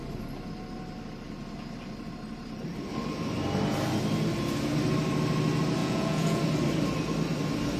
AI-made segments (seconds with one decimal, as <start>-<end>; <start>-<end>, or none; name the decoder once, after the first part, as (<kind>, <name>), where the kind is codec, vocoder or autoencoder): 5.8-6.4 (vocoder, Vocos)